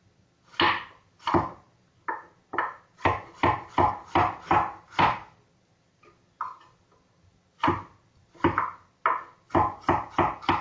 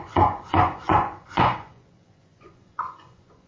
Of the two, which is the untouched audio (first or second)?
first